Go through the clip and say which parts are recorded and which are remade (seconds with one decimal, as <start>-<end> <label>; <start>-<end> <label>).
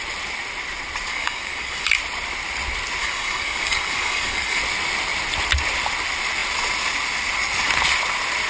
0.0-1.1 recorded; 1.1-2.0 remade; 2.0-3.0 recorded; 3.0-4.6 remade; 4.6-8.5 recorded